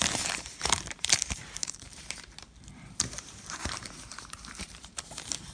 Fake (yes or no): yes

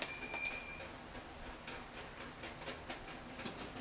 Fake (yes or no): no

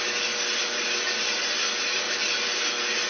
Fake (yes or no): no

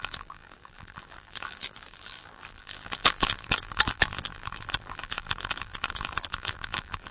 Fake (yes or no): yes